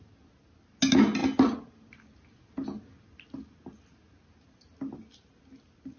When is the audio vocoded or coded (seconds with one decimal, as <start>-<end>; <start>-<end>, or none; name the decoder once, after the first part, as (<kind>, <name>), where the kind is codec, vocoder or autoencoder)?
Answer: none